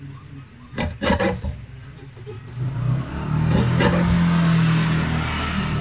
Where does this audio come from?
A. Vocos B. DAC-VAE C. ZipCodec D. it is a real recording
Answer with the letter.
D